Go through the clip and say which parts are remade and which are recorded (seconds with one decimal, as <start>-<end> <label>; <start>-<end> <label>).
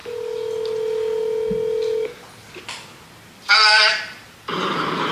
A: 0.0-5.1 recorded